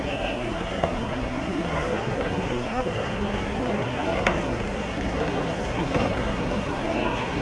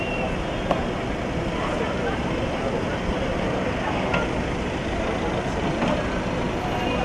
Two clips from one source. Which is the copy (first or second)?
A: first